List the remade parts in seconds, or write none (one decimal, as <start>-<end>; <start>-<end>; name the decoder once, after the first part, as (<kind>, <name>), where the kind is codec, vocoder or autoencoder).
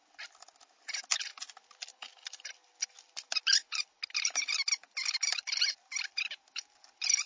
none